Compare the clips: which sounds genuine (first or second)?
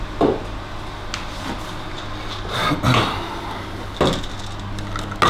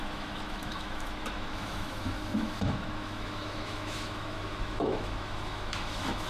first